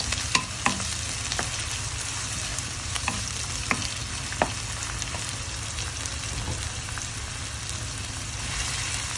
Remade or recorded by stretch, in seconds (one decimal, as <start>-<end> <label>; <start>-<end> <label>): 0.0-2.5 recorded; 2.5-3.3 remade; 3.3-9.2 recorded